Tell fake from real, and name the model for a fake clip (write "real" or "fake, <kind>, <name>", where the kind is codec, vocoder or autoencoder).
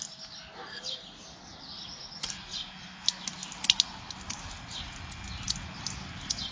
real